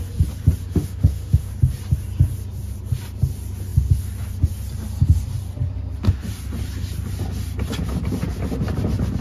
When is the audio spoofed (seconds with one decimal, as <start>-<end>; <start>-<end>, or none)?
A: 0.7-1.5